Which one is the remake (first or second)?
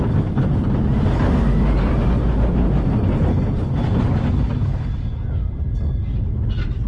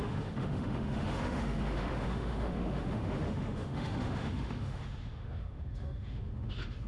second